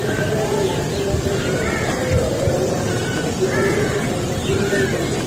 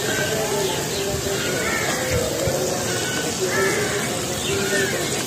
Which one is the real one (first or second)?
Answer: second